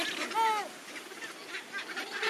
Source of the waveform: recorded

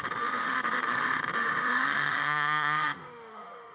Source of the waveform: remade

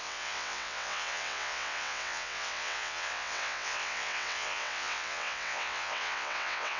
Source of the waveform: remade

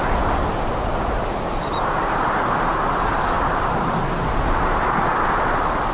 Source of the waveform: recorded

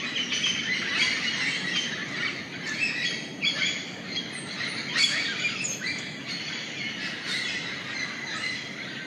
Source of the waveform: recorded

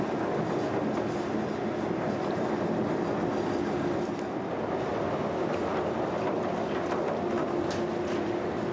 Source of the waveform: recorded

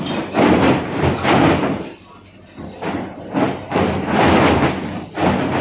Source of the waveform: recorded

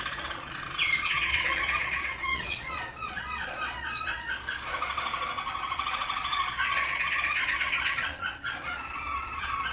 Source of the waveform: remade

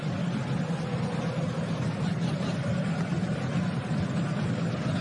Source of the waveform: recorded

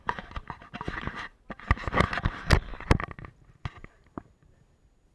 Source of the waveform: recorded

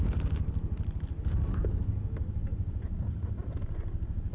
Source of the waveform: recorded